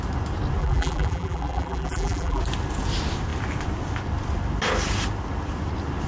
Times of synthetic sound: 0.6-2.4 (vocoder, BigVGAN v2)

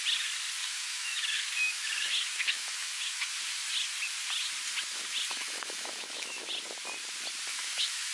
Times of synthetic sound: 0.6-3.3 (autoencoder, DAC-VAE); 5.3-6.5; 7.5-8.1

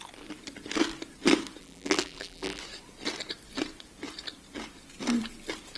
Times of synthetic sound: 1.6-2.6 (vocoder, BigVGAN v2)

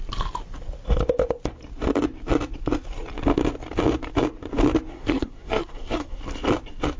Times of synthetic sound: 4.9-6.2 (codec, SNAC)

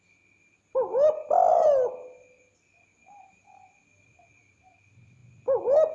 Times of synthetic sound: none

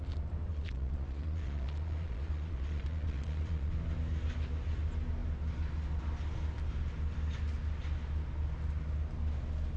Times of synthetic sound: 0.5-3.7 (vocoder, Vocos)

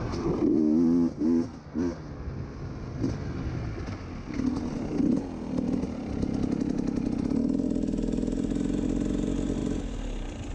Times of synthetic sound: none

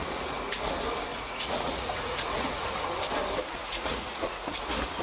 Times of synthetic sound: 0.0-0.6 (vocoder, Vocos); 1.1-2.8; 3.5-4.5